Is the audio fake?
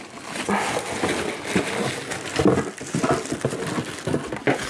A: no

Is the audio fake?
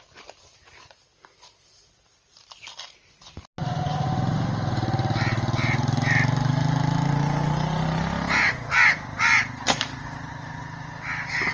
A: no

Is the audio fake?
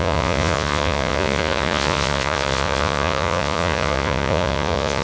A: yes